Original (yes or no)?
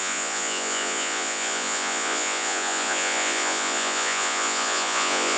no